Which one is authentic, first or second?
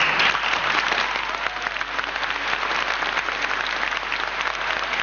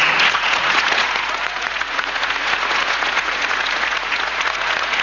first